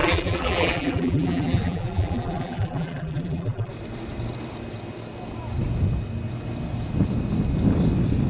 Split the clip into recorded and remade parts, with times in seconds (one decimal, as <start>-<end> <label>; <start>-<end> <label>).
0.0-3.7 remade; 3.7-8.3 recorded